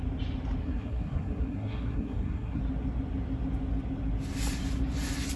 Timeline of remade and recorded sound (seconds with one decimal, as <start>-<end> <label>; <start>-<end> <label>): 0.0-0.6 recorded; 0.6-2.6 remade; 2.6-5.4 recorded

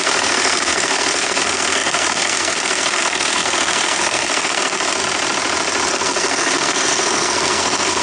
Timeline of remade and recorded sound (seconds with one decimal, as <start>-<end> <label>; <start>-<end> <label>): 0.0-5.0 remade; 5.0-5.9 recorded; 5.9-8.0 remade

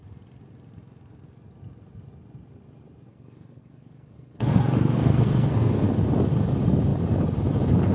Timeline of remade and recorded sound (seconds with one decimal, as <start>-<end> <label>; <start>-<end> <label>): 0.0-3.1 recorded; 3.1-5.7 remade; 5.7-7.9 recorded

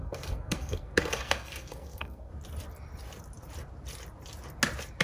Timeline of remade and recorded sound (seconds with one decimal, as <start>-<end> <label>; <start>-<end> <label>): 0.0-2.3 remade; 2.3-5.0 recorded

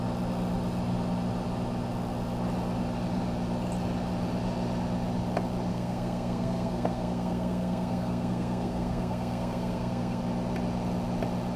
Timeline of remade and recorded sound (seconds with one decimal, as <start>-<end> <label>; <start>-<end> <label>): 0.0-5.7 recorded; 5.7-10.2 remade; 10.2-11.6 recorded

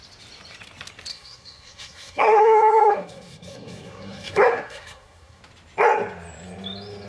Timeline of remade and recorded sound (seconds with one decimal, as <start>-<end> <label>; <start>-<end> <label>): 0.0-1.1 recorded; 1.1-5.4 remade; 5.4-7.1 recorded

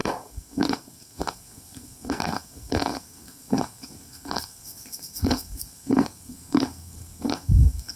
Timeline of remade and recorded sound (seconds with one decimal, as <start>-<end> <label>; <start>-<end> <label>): 0.0-8.0 remade